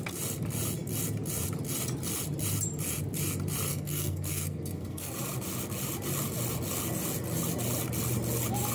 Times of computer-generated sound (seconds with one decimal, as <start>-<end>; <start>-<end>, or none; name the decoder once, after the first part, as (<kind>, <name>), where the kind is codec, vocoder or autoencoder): 3.7-5.1 (codec, SNAC)